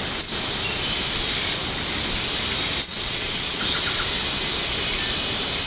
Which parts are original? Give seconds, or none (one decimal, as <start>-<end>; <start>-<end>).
0.0-2.9; 3.6-5.7